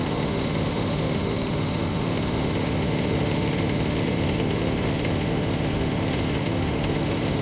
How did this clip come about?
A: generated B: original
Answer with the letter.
A